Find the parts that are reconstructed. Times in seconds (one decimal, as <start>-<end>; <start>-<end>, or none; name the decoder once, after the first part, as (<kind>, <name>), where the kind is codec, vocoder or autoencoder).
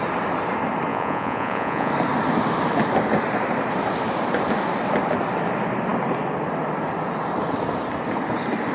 0.9-1.9 (vocoder, Vocos)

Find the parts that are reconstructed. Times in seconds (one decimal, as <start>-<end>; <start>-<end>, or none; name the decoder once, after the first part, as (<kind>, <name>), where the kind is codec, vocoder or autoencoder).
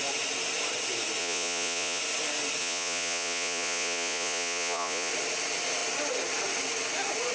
1.2-2.0 (vocoder, Vocos); 2.6-5.1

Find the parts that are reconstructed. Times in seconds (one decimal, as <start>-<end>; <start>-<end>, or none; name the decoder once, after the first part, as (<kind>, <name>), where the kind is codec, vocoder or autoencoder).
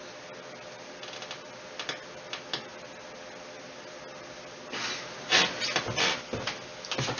none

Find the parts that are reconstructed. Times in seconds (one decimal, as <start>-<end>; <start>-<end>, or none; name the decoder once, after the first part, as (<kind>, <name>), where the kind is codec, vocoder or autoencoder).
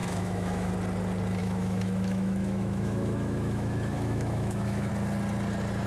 0.0-0.7 (autoencoder, DAC-VAE); 1.4-4.9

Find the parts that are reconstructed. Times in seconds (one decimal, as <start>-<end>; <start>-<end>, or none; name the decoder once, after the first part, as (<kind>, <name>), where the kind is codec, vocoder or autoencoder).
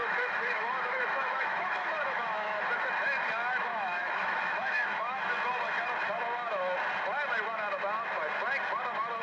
0.0-2.9 (autoencoder, DAC-VAE); 3.7-5.3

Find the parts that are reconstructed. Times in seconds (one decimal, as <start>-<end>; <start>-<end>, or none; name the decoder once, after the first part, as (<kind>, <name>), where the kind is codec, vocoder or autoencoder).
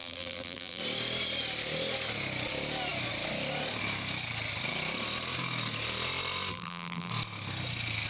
0.0-0.8 (vocoder, BigVGAN v2); 6.5-7.1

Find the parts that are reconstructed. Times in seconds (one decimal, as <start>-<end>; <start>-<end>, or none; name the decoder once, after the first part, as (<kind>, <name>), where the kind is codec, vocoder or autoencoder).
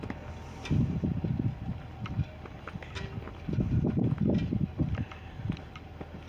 4.4-5.7 (vocoder, BigVGAN v2)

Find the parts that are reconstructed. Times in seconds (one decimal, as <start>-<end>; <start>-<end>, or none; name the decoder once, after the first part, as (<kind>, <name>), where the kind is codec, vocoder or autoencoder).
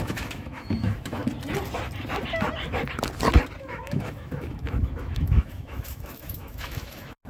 0.0-1.2 (autoencoder, DAC-VAE); 3.6-7.3